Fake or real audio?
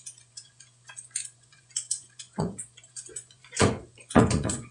fake